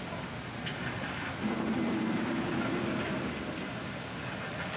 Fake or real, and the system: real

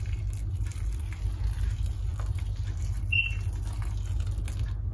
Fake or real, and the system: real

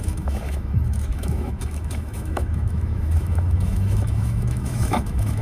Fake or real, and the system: fake, autoencoder, DAC-VAE